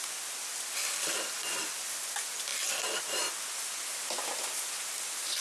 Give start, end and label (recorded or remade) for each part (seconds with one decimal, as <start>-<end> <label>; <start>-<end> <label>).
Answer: 0.0-5.4 recorded